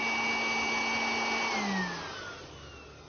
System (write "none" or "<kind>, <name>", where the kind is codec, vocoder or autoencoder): none